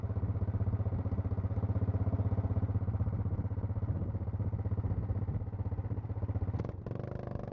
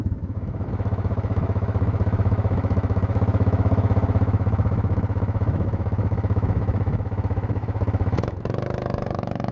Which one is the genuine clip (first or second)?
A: first